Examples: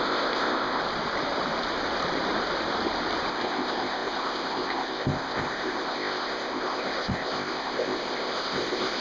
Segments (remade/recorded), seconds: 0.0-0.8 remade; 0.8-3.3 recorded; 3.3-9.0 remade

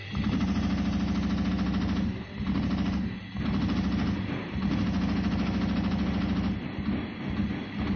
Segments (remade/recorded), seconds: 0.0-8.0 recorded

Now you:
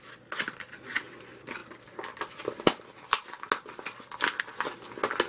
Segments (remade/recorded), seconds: 0.0-5.3 recorded

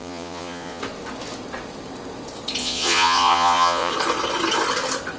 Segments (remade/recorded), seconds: 0.0-0.8 remade; 0.8-2.6 recorded; 2.6-3.9 remade; 3.9-5.2 recorded